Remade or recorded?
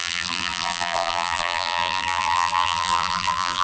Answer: remade